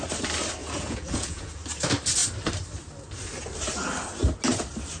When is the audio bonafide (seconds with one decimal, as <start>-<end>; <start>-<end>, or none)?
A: 0.0-0.6; 1.5-5.0